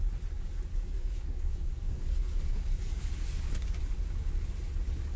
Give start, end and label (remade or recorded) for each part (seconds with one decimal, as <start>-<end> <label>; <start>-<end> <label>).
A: 0.0-0.7 recorded; 0.7-3.8 remade; 3.8-5.2 recorded